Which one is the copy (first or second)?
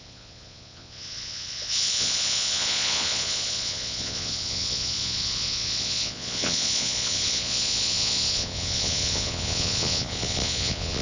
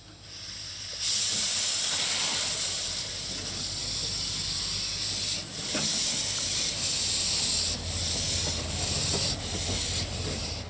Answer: first